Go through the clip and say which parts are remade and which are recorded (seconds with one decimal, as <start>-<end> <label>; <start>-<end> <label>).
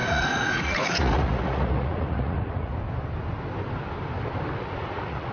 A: 0.0-2.7 remade; 2.7-4.5 recorded; 4.5-5.3 remade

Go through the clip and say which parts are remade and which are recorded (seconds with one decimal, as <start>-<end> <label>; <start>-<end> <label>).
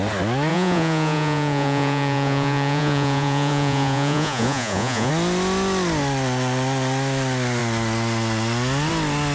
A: 0.0-0.5 recorded; 0.5-5.1 remade; 5.1-9.3 recorded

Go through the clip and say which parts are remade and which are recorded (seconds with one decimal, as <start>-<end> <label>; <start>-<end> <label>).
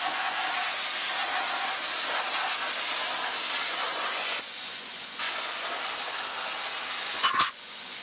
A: 0.0-0.4 remade; 0.4-3.7 recorded; 3.7-5.7 remade; 5.7-7.0 recorded; 7.0-8.0 remade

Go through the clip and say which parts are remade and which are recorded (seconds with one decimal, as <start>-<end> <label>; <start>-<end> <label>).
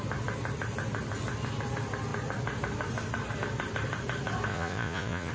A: 0.0-4.5 recorded; 4.5-5.3 remade